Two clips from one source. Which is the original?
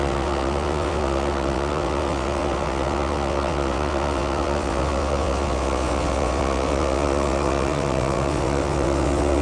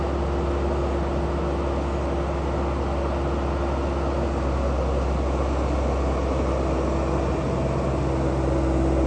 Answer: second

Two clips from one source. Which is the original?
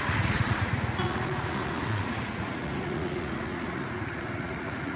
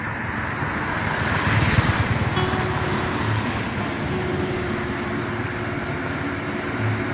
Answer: second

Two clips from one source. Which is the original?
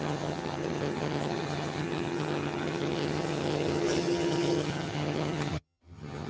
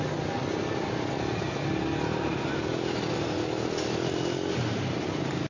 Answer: second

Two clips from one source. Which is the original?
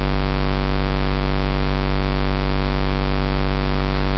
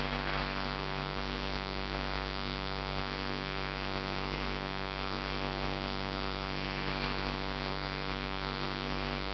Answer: first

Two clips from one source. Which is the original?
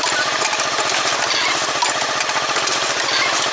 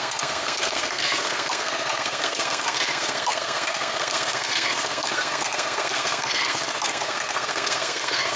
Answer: first